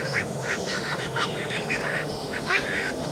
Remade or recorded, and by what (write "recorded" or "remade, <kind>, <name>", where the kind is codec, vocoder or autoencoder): remade, autoencoder, DAC-VAE